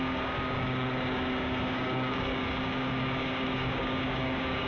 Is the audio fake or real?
fake